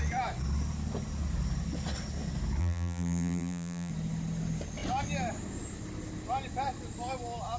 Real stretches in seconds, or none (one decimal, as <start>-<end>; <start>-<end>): 0.0-2.6; 3.9-7.6